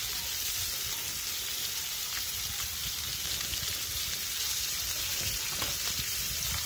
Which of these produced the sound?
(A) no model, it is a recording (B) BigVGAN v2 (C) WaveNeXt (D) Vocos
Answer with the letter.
A